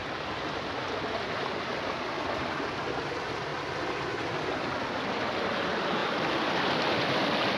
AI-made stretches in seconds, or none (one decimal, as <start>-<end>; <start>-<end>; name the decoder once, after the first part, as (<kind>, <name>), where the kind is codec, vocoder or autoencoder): none